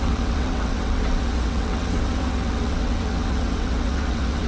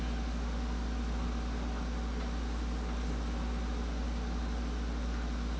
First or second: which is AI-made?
first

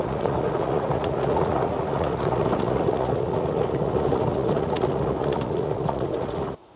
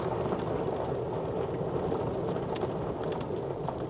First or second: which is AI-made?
first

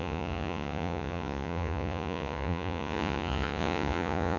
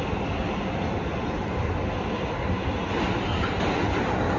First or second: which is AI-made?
first